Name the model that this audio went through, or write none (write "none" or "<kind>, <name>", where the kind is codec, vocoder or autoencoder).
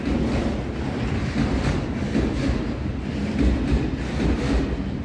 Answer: none